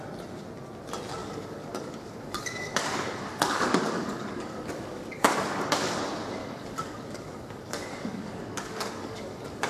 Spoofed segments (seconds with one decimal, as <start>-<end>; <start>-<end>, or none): 1.2-6.0; 6.4-9.7